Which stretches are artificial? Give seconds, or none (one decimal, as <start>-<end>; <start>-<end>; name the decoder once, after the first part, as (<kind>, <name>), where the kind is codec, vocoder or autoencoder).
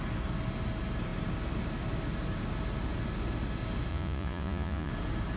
3.9-4.9 (vocoder, Vocos)